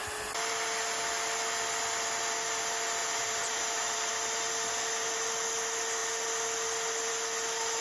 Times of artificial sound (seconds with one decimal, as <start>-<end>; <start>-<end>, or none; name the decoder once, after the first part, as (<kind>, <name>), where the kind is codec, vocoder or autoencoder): 3.0-4.1 (vocoder, BigVGAN v2)